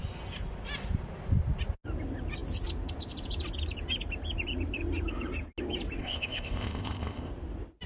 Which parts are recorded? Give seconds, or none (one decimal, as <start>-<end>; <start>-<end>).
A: 0.0-6.0; 7.3-7.9